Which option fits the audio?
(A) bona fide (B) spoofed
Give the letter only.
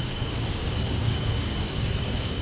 B